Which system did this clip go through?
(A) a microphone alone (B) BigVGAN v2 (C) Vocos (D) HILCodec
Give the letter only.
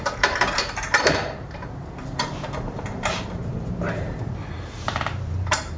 B